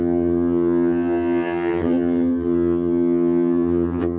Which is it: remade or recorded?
remade